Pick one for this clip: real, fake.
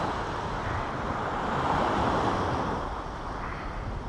real